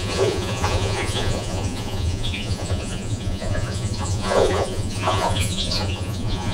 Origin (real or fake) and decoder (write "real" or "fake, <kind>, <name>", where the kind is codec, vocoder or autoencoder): fake, vocoder, Vocos